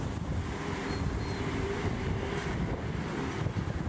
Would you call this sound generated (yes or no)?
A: no